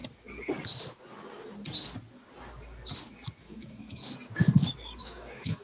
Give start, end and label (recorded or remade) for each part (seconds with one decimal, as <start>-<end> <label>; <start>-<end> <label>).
0.0-3.4 recorded; 3.4-4.0 remade; 4.0-5.0 recorded; 5.0-5.6 remade